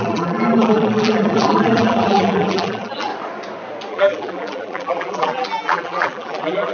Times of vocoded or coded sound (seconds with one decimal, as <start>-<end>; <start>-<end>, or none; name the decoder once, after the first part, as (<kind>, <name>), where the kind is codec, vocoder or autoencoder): 0.0-3.1 (vocoder, BigVGAN v2); 3.9-6.7